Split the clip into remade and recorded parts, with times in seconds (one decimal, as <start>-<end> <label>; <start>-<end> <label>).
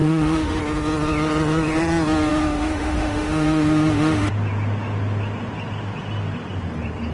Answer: 0.0-0.6 remade; 0.6-2.3 recorded; 2.3-4.3 remade; 4.3-7.1 recorded